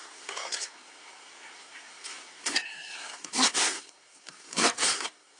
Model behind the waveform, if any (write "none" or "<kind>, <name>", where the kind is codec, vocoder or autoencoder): codec, SNAC